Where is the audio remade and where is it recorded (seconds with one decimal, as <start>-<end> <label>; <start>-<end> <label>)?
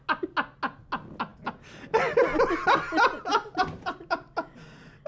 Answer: 0.0-5.1 recorded